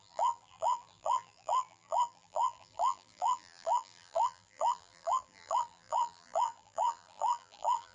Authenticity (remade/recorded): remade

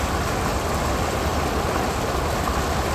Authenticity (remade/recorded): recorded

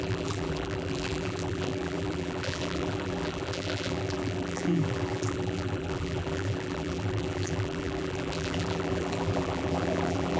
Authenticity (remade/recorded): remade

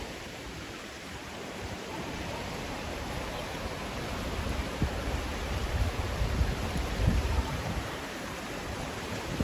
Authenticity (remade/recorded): remade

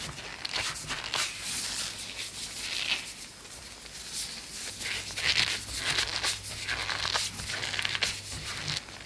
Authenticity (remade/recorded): recorded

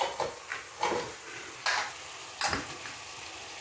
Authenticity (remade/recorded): recorded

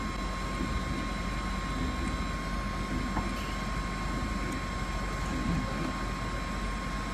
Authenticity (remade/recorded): recorded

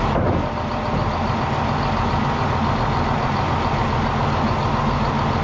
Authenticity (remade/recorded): recorded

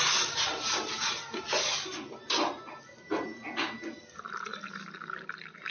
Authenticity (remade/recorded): recorded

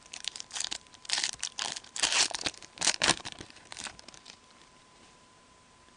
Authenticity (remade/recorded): remade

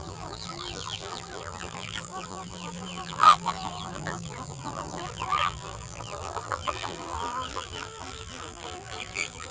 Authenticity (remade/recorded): remade